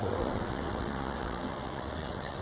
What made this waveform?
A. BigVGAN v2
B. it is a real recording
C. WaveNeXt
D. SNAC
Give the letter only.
C